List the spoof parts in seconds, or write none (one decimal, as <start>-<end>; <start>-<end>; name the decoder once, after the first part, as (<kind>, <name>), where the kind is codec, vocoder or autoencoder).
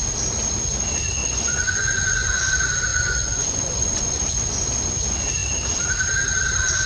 1.2-2.4 (vocoder, Vocos); 2.9-4.7